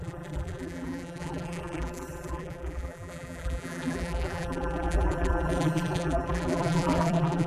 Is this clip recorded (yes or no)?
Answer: no